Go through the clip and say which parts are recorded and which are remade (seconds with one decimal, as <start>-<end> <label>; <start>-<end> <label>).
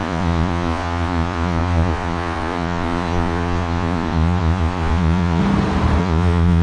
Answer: 0.0-5.4 remade; 5.4-6.0 recorded; 6.0-6.6 remade